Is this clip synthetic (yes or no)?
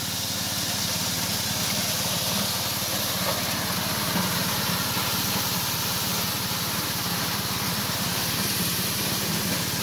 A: no